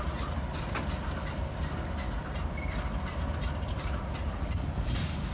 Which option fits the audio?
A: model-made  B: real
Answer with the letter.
B